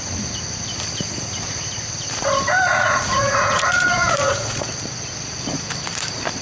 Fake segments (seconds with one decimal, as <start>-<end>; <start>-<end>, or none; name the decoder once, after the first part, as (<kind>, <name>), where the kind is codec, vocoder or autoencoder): 2.7-4.7 (vocoder, Vocos)

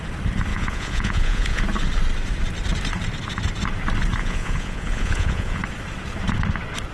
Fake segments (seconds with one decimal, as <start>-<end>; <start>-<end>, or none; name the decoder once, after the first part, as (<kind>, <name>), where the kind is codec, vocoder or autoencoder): 0.5-1.6 (vocoder, Vocos); 4.2-5.6

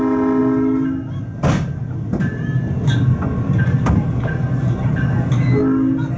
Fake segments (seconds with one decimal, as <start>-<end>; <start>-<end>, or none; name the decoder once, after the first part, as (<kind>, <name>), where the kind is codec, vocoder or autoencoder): none

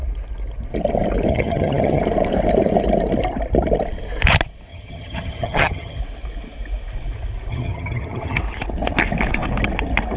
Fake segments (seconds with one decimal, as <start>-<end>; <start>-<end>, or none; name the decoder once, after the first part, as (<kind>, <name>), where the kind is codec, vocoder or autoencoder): 1.3-2.0 (vocoder, HiFi-GAN); 4.7-6.0; 7.5-8.4

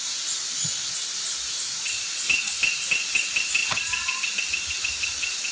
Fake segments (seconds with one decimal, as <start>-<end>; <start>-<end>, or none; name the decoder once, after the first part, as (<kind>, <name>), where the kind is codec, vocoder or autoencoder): none

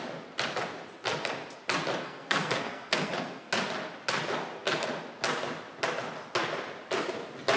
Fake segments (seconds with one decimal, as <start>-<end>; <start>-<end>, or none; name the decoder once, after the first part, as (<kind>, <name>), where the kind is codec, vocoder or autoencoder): 2.0-3.5 (codec, SNAC)

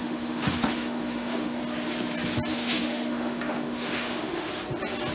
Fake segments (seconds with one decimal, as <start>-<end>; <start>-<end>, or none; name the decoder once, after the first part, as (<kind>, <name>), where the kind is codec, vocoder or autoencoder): 0.0-1.6 (autoencoder, DAC-VAE); 2.5-4.5

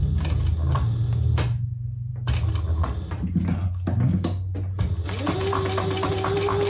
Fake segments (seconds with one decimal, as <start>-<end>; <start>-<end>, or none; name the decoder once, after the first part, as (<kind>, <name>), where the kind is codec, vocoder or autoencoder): none